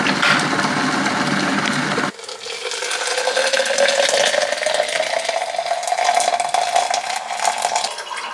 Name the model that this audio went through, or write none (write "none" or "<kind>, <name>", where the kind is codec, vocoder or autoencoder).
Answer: none